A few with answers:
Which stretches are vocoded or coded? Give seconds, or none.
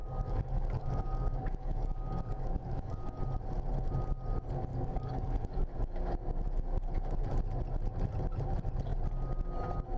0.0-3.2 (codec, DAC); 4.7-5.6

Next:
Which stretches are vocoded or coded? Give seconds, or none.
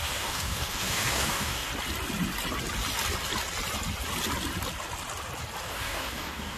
0.0-1.7 (codec, DAC); 5.7-6.6